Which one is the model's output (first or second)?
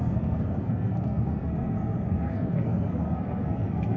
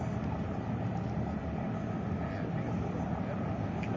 first